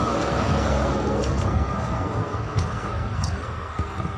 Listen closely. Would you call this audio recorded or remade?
remade